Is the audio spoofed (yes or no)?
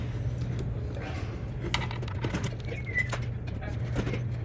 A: no